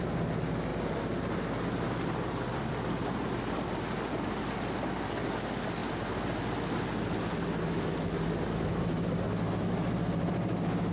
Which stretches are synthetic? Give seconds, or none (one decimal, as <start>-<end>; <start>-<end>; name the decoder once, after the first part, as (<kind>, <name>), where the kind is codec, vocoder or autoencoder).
none